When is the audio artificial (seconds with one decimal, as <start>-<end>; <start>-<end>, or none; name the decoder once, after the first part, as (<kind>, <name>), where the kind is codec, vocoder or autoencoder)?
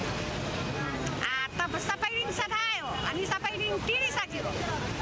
0.9-1.4 (vocoder, BigVGAN v2); 2.2-2.6